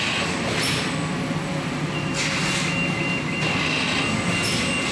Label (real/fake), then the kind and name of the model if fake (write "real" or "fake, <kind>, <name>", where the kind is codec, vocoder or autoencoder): real